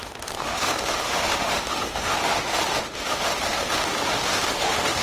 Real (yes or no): no